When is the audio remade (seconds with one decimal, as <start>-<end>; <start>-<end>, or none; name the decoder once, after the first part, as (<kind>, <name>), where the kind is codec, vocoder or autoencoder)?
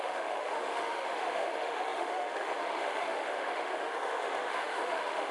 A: 0.0-5.3 (autoencoder, DAC-VAE)